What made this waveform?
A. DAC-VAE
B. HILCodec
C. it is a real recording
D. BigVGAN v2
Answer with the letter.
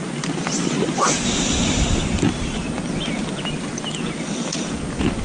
C